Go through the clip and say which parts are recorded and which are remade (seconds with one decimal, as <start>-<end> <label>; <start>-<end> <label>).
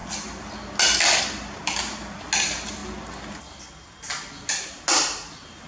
0.0-5.7 recorded